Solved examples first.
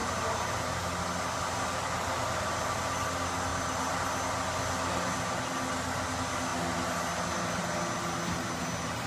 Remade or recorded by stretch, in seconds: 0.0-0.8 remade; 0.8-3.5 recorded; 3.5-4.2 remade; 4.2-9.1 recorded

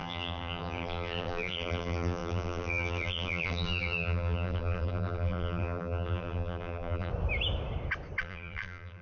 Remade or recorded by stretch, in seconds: 0.0-7.1 remade; 7.1-8.2 recorded; 8.2-9.0 remade

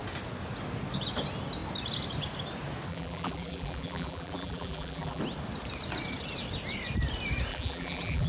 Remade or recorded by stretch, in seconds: 0.0-2.9 recorded; 2.9-5.2 remade; 5.2-7.5 recorded; 7.5-8.3 remade

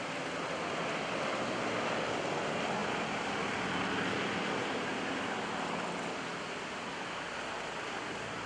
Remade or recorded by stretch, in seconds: 0.0-2.8 recorded; 2.8-3.5 remade; 3.5-8.5 recorded

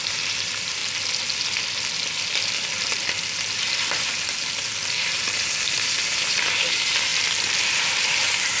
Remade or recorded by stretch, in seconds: 0.0-0.8 remade; 0.8-4.9 recorded; 4.9-7.1 remade; 7.1-7.7 recorded; 7.7-8.6 remade